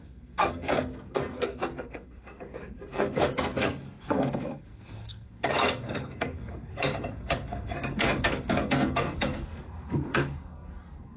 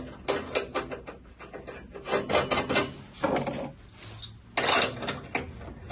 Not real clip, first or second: first